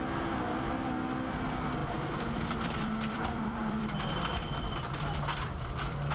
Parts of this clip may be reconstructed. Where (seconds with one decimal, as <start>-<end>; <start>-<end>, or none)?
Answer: 1.8-3.8; 4.4-6.1